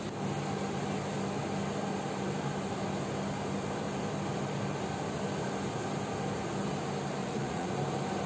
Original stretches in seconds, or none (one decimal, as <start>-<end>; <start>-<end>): 0.0-7.2; 7.7-8.3